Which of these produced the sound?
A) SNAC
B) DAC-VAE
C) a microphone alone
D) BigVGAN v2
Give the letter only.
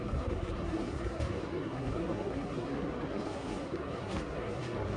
A